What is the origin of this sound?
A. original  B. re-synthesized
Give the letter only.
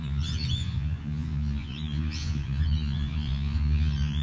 B